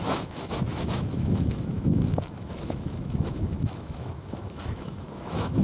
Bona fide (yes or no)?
no